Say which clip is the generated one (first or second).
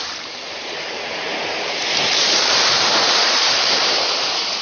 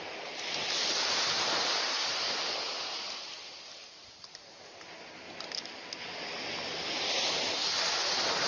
first